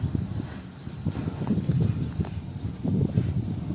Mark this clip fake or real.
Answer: fake